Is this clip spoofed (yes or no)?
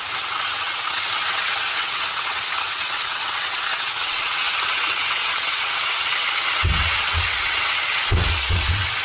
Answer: yes